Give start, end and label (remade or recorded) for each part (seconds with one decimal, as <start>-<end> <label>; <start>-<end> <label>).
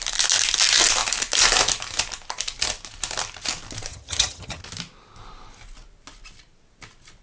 0.0-3.9 recorded; 3.9-4.6 remade; 4.6-7.2 recorded